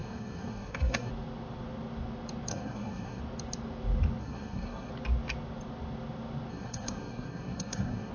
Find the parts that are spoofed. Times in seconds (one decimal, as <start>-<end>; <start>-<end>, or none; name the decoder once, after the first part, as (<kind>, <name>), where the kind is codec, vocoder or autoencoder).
0.0-1.1 (codec, SNAC); 2.5-3.2; 4.2-4.9; 6.5-8.1